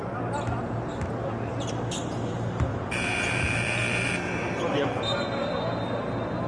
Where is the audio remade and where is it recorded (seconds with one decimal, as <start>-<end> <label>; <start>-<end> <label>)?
0.0-2.7 recorded; 2.7-5.0 remade; 5.0-6.5 recorded